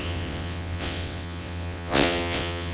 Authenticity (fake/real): fake